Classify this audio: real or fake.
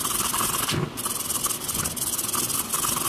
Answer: real